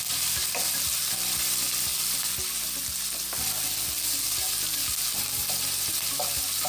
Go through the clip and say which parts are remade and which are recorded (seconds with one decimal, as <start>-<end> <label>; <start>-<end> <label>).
0.0-1.9 remade; 1.9-5.9 recorded; 5.9-6.7 remade